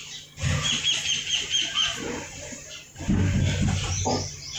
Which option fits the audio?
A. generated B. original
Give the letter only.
B